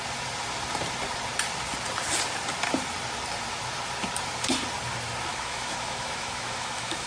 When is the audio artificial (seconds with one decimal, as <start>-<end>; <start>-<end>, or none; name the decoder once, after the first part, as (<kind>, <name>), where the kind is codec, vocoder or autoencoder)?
5.3-7.1 (autoencoder, DAC-VAE)